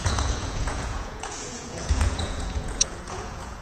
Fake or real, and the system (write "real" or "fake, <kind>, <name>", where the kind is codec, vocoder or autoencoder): fake, vocoder, Vocos